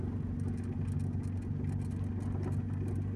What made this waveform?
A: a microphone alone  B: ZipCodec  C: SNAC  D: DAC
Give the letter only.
A